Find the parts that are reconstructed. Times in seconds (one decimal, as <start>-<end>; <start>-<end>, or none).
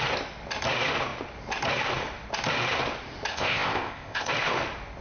3.3-4.3